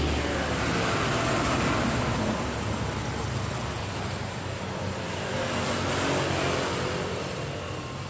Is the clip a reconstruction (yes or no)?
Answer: no